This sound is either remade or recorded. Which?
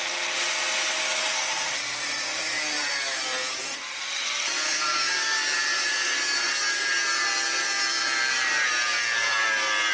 recorded